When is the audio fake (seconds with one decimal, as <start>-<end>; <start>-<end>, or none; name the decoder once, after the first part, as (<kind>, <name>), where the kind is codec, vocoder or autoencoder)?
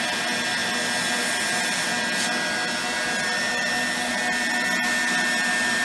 none